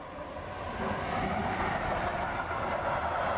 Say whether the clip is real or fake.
real